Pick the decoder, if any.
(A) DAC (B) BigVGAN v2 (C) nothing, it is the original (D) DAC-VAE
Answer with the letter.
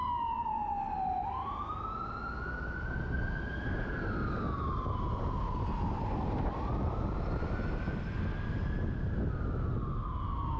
C